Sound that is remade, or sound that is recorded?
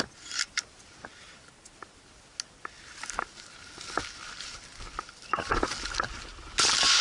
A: recorded